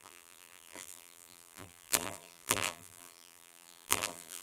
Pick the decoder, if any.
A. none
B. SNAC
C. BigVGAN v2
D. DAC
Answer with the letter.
C